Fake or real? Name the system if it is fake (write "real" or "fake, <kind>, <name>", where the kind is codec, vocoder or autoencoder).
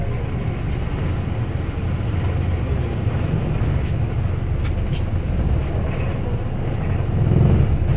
real